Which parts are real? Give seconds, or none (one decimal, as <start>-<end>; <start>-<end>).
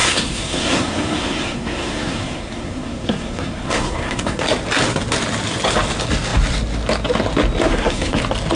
4.4-7.7; 8.2-8.6